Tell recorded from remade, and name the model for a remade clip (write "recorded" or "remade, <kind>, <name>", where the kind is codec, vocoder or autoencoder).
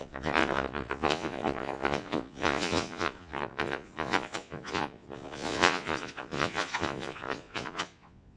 remade, vocoder, Vocos